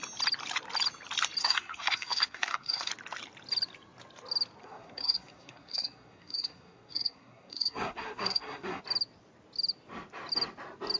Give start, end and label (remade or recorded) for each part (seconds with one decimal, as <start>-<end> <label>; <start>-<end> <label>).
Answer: 0.0-1.4 recorded; 1.4-2.9 remade; 2.9-4.6 recorded; 4.6-8.8 remade; 8.8-11.0 recorded